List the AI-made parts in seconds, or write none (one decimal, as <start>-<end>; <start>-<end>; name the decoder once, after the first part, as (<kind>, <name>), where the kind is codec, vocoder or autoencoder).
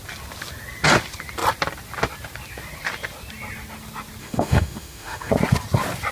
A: 4.2-5.3 (autoencoder, DAC-VAE)